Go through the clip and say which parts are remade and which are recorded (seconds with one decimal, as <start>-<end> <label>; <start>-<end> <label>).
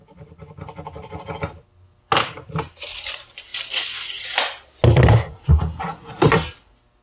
0.0-7.0 recorded